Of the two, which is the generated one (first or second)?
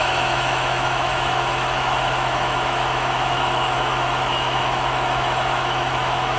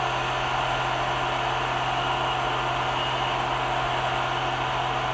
first